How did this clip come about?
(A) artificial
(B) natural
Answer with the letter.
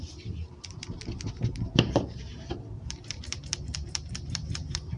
A